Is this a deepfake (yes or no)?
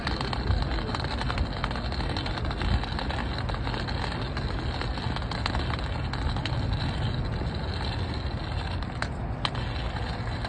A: no